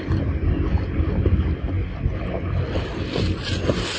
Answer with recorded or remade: recorded